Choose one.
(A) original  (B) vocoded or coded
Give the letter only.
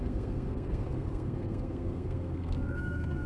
B